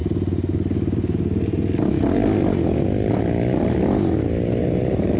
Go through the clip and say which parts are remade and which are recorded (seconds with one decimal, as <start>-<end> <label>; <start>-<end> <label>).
0.0-5.2 recorded